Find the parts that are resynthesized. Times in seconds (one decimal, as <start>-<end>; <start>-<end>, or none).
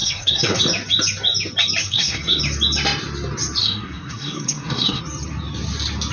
0.0-0.6; 1.8-2.4; 3.6-5.0